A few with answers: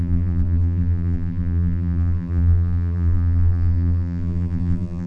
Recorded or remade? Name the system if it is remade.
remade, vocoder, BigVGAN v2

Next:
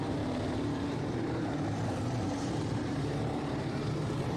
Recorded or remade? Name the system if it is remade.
remade, vocoder, BigVGAN v2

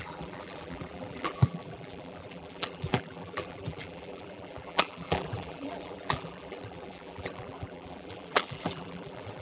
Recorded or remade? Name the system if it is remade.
remade, vocoder, BigVGAN v2